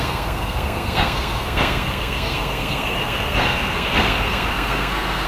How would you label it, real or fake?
fake